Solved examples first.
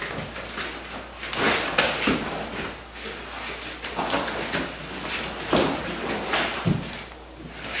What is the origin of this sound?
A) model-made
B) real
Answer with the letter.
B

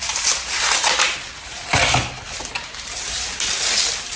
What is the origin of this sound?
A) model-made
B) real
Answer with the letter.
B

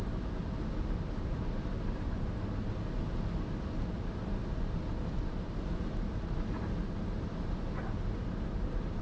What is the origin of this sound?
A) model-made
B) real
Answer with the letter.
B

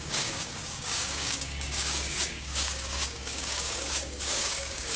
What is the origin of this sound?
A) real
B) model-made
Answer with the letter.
B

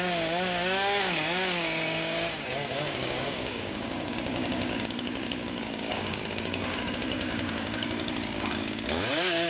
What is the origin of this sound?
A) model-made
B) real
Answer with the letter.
A